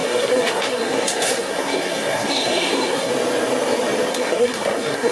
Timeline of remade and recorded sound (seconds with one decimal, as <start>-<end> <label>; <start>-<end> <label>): 0.0-3.1 remade; 3.1-4.1 recorded; 4.1-5.1 remade